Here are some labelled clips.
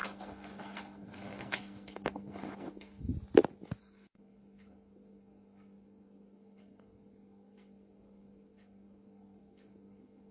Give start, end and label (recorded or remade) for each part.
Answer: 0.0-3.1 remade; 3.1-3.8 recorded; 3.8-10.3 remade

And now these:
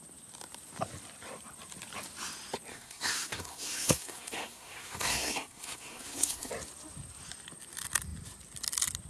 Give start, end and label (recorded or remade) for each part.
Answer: 0.0-2.7 recorded; 2.7-6.5 remade; 6.5-9.1 recorded

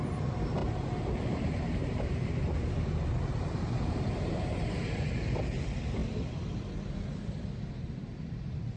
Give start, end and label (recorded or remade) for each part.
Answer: 0.0-6.0 remade; 6.0-7.7 recorded; 7.7-8.8 remade

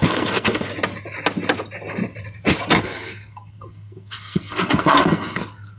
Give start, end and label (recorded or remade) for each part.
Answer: 0.0-0.7 remade; 0.7-2.8 recorded; 2.8-5.8 remade